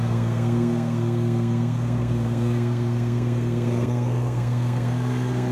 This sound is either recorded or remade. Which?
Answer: remade